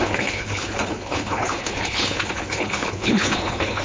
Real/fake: fake